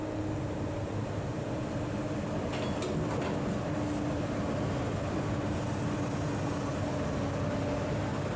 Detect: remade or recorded recorded